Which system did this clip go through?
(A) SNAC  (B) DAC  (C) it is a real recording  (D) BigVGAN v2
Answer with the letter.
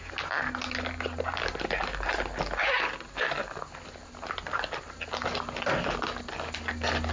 C